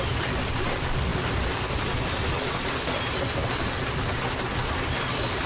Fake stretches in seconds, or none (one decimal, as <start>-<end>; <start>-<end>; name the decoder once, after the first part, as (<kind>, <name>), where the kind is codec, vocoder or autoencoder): none

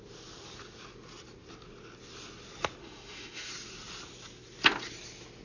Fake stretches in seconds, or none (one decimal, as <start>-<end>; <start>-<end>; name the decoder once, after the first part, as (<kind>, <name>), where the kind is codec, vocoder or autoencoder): 2.8-3.5 (autoencoder, DAC-VAE)

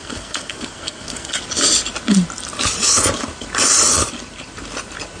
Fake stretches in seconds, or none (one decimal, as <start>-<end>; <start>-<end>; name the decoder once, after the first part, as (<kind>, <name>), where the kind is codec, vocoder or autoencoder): 0.0-1.4 (codec, SNAC)

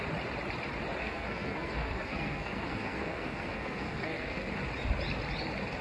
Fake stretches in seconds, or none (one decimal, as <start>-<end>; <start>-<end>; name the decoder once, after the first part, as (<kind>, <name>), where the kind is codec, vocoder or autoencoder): 1.0-4.5 (codec, SNAC)

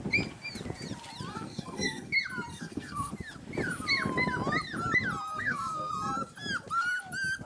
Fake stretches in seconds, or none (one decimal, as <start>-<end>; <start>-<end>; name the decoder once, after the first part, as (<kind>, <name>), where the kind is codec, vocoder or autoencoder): 1.3-2.1 (codec, SNAC); 2.5-3.1; 5.3-5.9